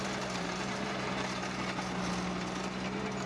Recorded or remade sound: recorded